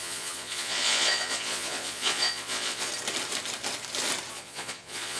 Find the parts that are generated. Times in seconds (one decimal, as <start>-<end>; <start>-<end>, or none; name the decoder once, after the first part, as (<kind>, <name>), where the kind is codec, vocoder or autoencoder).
0.0-2.9 (vocoder, Vocos); 4.3-5.2